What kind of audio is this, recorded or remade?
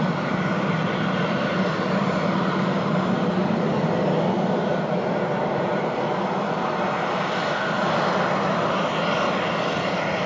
recorded